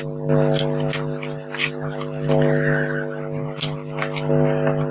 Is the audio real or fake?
real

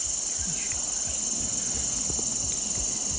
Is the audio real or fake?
real